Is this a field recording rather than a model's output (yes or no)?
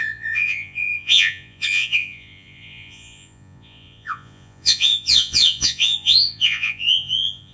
no